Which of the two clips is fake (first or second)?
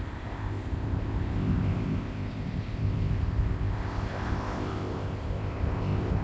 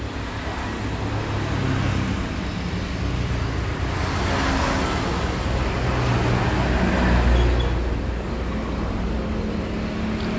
first